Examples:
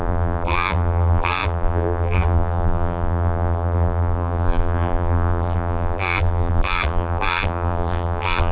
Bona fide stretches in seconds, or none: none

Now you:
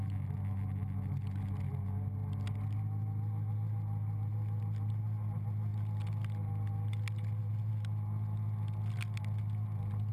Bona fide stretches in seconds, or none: 0.0-10.1

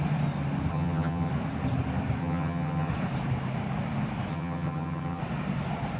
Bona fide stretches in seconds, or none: 0.0-0.7; 1.3-2.2; 2.9-4.3; 5.2-6.0